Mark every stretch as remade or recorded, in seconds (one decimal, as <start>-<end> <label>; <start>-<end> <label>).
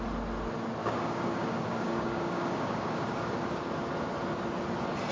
0.0-0.8 recorded; 0.8-3.7 remade; 3.7-5.1 recorded